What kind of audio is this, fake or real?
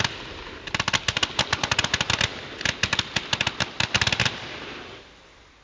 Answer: real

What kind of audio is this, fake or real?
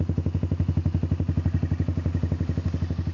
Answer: real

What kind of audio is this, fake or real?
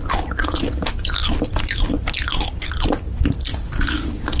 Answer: real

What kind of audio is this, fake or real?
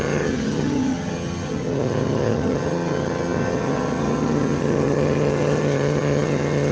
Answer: fake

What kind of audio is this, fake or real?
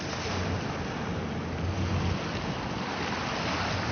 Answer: real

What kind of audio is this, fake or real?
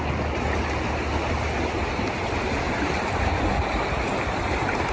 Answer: real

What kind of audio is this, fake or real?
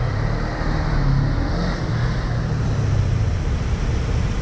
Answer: real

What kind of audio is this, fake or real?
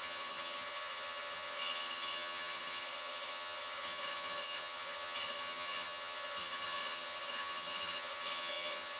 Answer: fake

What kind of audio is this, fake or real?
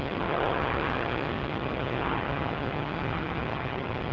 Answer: fake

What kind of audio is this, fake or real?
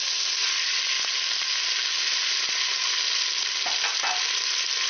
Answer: real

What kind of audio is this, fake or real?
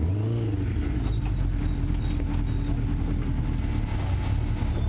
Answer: real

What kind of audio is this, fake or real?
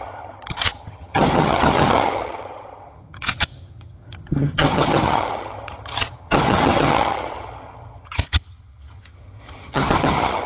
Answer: fake